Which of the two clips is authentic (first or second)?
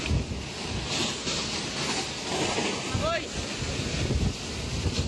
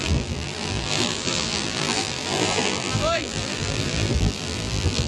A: first